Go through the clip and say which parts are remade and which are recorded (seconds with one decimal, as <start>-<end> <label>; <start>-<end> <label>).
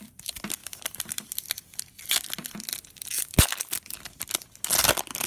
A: 0.0-0.6 recorded; 0.6-1.9 remade; 1.9-2.7 recorded; 2.7-3.4 remade; 3.4-5.3 recorded